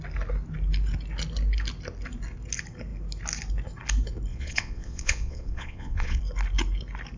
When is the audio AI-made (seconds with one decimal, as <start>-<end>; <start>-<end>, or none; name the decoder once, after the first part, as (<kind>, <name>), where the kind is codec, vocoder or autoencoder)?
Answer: 4.3-6.2 (vocoder, Vocos)

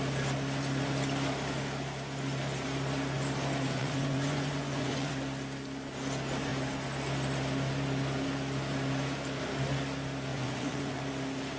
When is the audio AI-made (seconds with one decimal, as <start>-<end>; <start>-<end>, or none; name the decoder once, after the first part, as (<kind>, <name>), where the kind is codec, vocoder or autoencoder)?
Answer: 3.8-5.1 (vocoder, Vocos); 10.3-11.0